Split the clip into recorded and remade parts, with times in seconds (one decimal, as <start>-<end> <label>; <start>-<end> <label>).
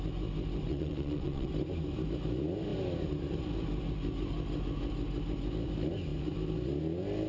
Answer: 0.0-0.7 recorded; 0.7-1.5 remade; 1.5-7.3 recorded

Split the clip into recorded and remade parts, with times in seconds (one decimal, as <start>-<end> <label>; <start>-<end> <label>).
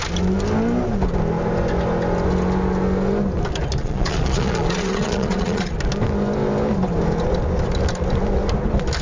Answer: 0.0-3.8 recorded; 3.8-5.7 remade; 5.7-9.0 recorded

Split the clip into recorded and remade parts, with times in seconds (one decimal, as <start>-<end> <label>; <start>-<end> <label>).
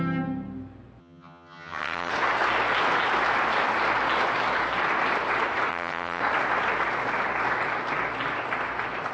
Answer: 0.0-1.0 recorded; 1.0-2.1 remade; 2.1-5.7 recorded; 5.7-6.2 remade; 6.2-9.1 recorded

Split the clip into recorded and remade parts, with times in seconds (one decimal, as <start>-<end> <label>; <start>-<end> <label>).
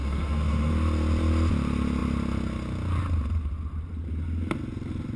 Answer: 0.0-0.7 remade; 0.7-5.2 recorded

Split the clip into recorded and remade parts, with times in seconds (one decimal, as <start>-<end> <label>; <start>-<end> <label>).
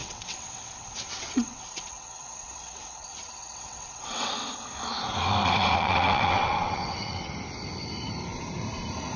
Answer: 0.0-4.3 remade; 4.3-5.4 recorded; 5.4-7.3 remade; 7.3-9.2 recorded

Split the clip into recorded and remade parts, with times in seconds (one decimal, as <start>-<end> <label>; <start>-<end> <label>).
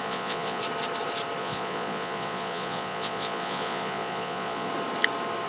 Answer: 0.0-0.6 remade; 0.6-1.4 recorded; 1.4-4.7 remade; 4.7-5.5 recorded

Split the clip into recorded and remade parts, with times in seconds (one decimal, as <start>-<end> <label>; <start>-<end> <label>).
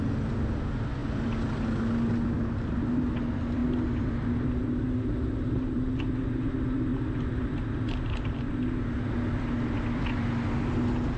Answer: 0.0-11.2 recorded